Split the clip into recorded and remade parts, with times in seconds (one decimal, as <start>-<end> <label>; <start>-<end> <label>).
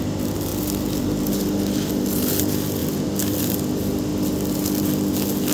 0.0-5.5 recorded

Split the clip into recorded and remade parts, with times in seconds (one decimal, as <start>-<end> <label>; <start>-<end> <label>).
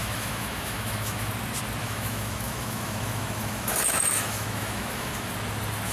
0.0-1.3 remade; 1.3-1.8 recorded; 1.8-5.3 remade; 5.3-5.9 recorded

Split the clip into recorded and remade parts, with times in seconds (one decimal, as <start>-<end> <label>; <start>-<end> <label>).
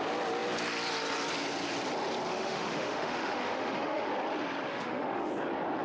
0.0-2.3 recorded; 2.3-4.1 remade; 4.1-4.7 recorded; 4.7-5.3 remade; 5.3-5.8 recorded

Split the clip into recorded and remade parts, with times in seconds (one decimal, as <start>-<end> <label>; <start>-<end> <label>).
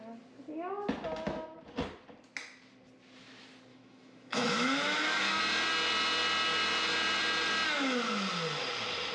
0.0-3.7 recorded; 3.7-5.4 remade; 5.4-9.1 recorded